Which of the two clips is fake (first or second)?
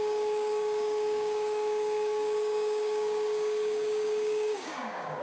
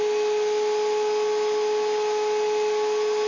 first